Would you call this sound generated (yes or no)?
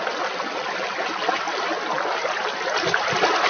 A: no